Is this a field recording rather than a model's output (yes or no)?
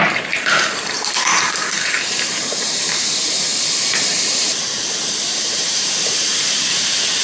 no